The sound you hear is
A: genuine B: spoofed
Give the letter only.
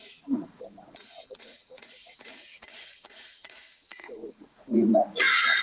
B